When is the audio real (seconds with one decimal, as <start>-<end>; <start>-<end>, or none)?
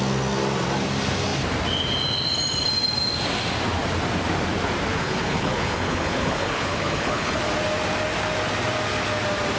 0.0-4.9; 7.4-9.6